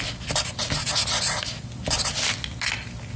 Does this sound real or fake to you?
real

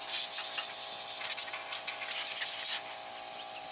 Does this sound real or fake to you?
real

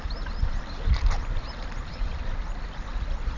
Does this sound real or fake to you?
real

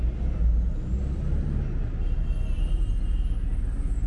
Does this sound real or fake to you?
real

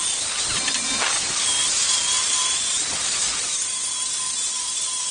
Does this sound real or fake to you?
real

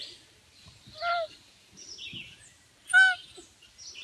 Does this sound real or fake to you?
real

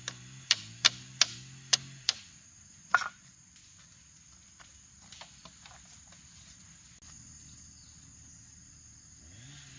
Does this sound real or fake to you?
real